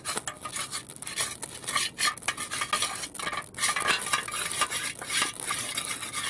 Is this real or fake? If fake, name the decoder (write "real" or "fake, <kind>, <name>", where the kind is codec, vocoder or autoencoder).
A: real